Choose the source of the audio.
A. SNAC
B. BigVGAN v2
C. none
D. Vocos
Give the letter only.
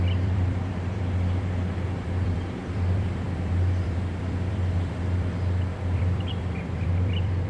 B